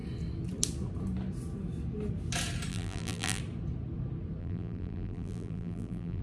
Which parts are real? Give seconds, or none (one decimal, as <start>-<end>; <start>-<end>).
0.0-2.7; 3.4-4.4